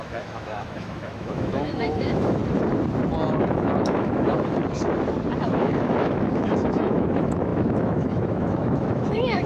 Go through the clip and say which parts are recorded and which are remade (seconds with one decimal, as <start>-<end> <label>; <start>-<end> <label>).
0.0-2.4 remade; 2.4-3.4 recorded; 3.4-4.6 remade; 4.6-5.4 recorded; 5.4-9.5 remade